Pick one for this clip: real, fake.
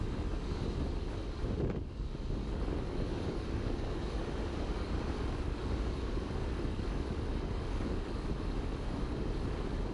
fake